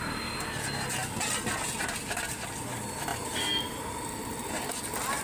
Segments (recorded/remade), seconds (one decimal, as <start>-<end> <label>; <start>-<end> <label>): 0.0-3.1 recorded; 3.1-4.5 remade; 4.5-5.2 recorded